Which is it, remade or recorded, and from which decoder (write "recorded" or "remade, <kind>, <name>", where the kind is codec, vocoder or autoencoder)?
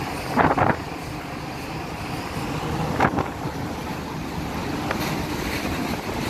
remade, vocoder, BigVGAN v2